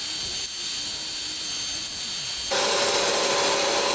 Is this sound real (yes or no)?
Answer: yes